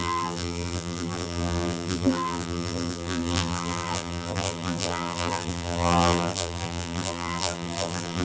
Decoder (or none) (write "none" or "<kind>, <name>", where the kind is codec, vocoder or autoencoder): vocoder, BigVGAN v2